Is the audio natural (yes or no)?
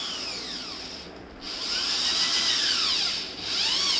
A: yes